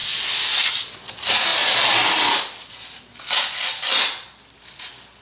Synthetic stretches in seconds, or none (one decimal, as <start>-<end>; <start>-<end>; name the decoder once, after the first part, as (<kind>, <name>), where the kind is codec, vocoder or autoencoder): none